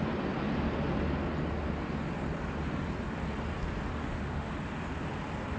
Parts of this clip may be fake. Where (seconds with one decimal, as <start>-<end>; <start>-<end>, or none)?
4.0-4.5